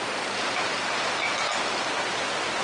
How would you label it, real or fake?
real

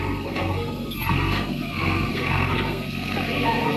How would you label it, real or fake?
fake